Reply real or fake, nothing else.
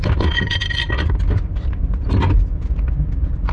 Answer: real